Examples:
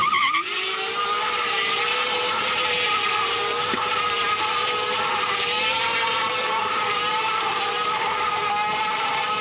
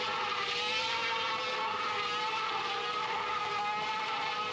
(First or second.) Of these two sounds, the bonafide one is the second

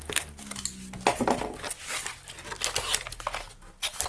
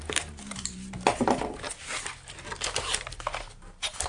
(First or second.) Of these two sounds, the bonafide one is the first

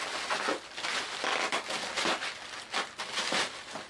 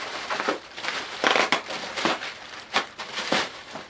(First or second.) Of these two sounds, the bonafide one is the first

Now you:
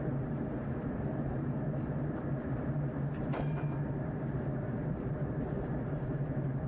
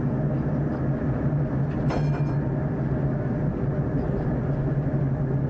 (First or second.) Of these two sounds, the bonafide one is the second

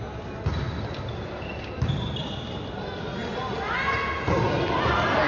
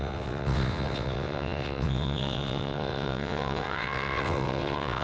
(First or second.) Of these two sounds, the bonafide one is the first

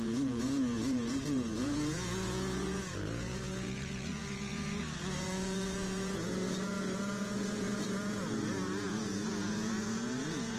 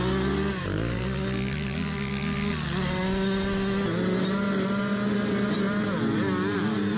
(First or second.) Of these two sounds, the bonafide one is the second